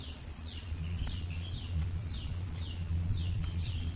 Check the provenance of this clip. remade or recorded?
remade